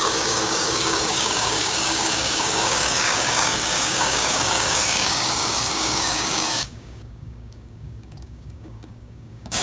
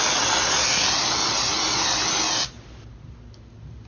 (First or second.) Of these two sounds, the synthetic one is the first